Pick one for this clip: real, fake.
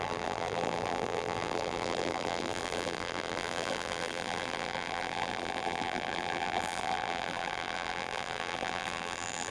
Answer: fake